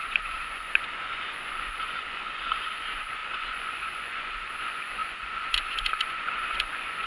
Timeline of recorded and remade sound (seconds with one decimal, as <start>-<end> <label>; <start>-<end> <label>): 0.0-7.1 remade